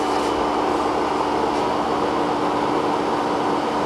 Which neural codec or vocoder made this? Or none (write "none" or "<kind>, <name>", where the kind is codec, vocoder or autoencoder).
none